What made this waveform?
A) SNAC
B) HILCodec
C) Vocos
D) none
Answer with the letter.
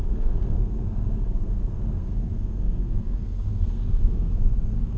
A